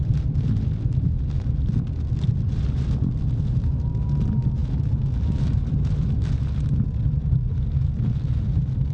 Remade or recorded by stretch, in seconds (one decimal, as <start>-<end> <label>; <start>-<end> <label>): 0.0-8.9 recorded